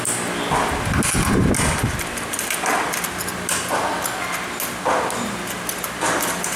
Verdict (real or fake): real